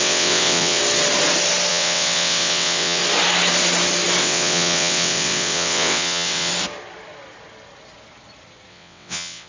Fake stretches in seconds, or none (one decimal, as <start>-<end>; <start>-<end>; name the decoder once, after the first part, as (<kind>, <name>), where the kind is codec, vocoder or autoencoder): 0.0-0.8 (vocoder, WaveNeXt); 1.7-3.0; 4.2-6.5; 8.7-9.5